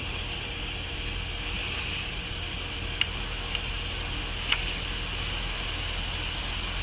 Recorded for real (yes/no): yes